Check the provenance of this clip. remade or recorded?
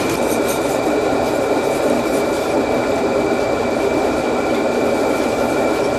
remade